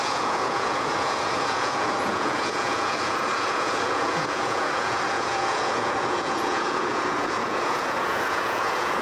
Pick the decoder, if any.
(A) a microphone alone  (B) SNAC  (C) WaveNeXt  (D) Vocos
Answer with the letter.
D